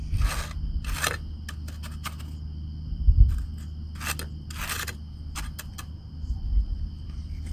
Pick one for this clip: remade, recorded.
recorded